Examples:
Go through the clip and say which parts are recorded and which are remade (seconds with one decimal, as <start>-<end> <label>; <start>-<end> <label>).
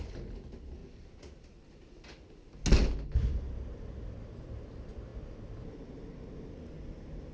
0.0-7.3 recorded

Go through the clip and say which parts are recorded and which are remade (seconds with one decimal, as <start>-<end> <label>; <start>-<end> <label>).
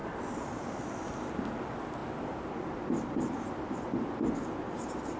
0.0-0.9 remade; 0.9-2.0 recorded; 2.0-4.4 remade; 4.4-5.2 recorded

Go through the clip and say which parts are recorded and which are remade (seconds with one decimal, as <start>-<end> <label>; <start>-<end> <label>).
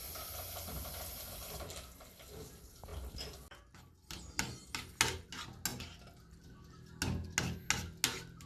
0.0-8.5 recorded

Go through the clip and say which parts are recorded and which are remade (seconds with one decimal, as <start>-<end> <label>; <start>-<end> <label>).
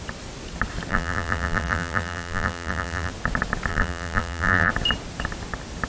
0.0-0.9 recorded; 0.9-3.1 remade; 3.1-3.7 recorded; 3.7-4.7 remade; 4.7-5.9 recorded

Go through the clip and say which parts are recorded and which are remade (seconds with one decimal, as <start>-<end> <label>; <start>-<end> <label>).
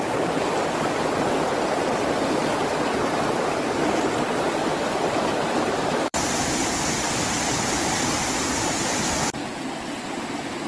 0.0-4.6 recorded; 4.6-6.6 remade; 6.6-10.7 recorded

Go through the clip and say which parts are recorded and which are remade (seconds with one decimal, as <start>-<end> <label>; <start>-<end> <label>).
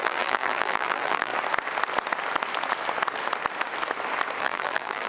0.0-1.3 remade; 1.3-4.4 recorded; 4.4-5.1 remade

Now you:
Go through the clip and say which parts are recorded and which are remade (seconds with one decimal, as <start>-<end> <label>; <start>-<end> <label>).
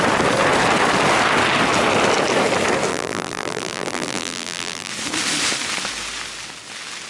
0.0-2.9 recorded; 2.9-4.9 remade; 4.9-7.1 recorded